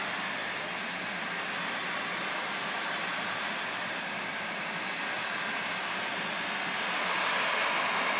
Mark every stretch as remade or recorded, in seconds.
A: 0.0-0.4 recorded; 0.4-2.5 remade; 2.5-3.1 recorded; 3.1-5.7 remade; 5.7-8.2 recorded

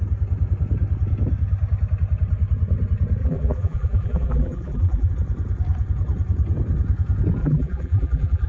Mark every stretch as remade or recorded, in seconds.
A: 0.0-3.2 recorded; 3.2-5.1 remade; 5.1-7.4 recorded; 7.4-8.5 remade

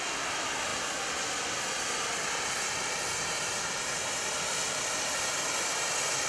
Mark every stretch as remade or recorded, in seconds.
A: 0.0-6.3 recorded

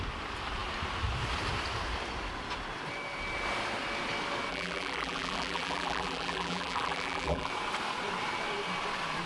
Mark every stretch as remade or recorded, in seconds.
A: 0.0-4.5 recorded; 4.5-7.5 remade; 7.5-9.3 recorded

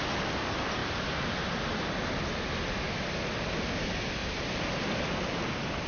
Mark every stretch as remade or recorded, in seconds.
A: 0.0-0.8 recorded; 0.8-2.0 remade; 2.0-4.2 recorded; 4.2-4.8 remade; 4.8-5.9 recorded

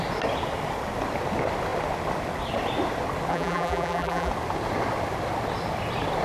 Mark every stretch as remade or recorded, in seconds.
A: 0.0-3.3 recorded; 3.3-4.3 remade; 4.3-6.2 recorded